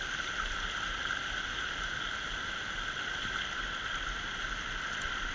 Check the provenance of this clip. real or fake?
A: real